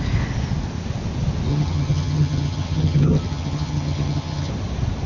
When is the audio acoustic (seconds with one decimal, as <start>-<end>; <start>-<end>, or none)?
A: 0.0-1.5; 4.5-5.1